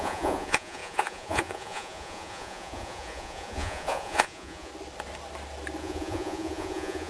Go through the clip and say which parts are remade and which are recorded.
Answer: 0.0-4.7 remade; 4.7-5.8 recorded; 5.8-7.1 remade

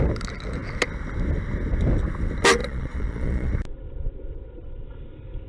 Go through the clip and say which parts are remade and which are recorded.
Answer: 0.0-2.6 recorded; 2.6-3.5 remade; 3.5-5.5 recorded